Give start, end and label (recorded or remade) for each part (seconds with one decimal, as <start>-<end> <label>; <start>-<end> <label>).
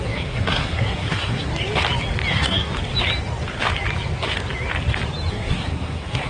0.0-1.5 remade; 1.5-2.3 recorded; 2.3-2.7 remade; 2.7-5.3 recorded; 5.3-6.3 remade